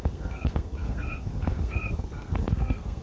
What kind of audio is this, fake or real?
fake